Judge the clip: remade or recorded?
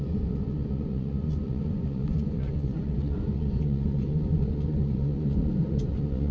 remade